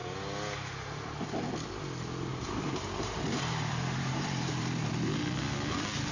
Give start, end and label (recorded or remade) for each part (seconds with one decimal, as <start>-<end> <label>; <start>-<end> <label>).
0.0-2.3 recorded; 2.3-4.9 remade; 4.9-6.1 recorded